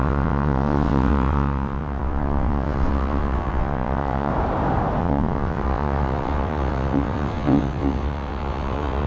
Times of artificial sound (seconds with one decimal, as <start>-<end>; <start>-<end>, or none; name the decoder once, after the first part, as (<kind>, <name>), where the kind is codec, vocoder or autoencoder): 0.0-4.3 (vocoder, WaveNeXt); 5.0-9.1